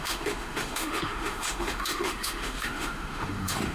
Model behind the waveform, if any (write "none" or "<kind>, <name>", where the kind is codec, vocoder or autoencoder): autoencoder, DAC-VAE